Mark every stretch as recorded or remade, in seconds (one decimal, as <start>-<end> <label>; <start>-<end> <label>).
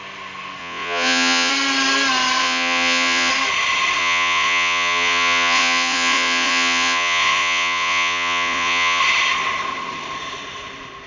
0.0-0.6 recorded; 0.6-1.5 remade; 1.5-2.4 recorded; 2.4-3.3 remade; 3.3-4.0 recorded; 4.0-9.0 remade; 9.0-11.1 recorded